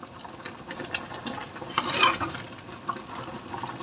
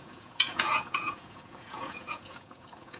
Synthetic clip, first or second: second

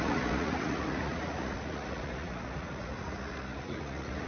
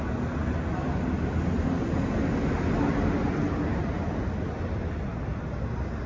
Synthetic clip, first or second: first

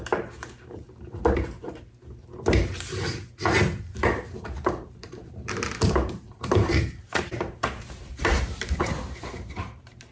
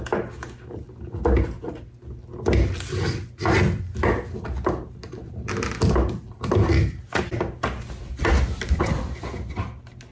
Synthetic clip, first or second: first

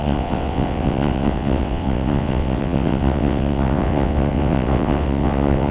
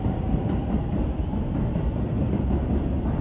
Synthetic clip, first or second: first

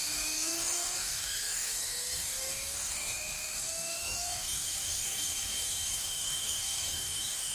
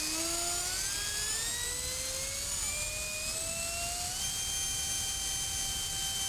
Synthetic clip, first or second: first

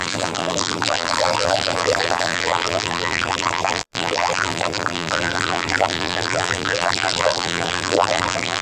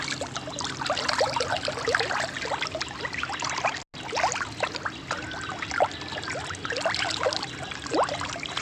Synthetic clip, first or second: first